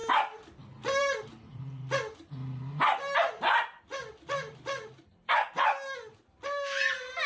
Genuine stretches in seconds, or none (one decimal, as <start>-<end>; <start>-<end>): 1.6-3.9; 5.5-7.3